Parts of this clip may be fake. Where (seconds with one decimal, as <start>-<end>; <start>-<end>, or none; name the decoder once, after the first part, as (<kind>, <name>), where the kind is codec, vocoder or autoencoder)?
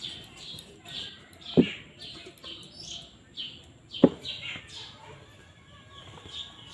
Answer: none